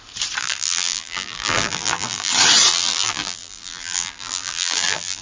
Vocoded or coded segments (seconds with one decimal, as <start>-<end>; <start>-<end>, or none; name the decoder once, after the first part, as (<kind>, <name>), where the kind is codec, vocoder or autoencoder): 0.4-2.3 (vocoder, BigVGAN v2); 2.7-5.2